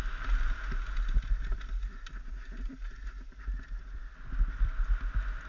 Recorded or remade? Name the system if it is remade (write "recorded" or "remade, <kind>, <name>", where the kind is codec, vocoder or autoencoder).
recorded